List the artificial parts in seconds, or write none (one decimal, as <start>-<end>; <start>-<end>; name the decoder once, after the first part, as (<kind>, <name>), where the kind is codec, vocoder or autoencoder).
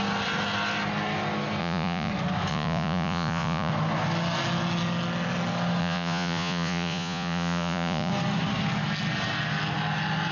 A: 1.6-2.1 (vocoder, Vocos); 2.5-3.7; 5.8-8.1